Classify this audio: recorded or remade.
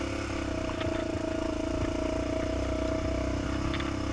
recorded